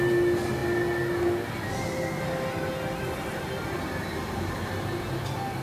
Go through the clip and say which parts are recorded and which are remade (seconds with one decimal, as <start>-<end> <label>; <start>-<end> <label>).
0.0-5.6 recorded